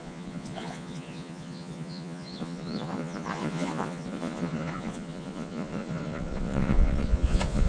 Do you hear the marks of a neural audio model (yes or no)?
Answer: yes